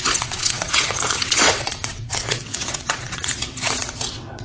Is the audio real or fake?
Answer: fake